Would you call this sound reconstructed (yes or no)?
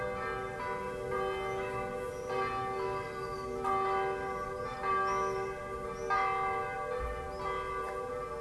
no